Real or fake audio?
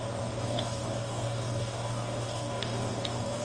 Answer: fake